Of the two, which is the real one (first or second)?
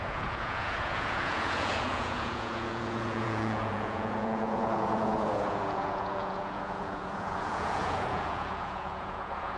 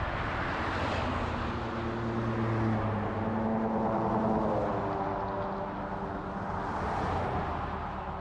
second